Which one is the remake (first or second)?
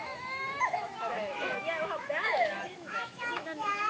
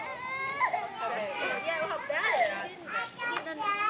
first